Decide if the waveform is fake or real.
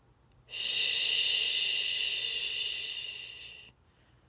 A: real